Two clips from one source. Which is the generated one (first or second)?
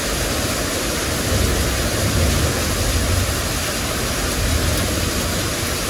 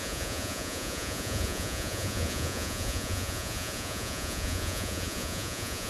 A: second